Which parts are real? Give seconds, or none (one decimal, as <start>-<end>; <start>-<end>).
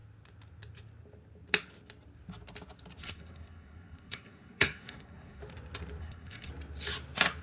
0.0-3.0; 5.4-6.0; 6.5-7.4